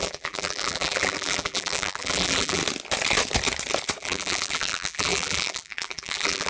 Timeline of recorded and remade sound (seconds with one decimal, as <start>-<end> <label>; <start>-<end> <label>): 0.0-2.6 remade; 2.6-4.0 recorded; 4.0-6.5 remade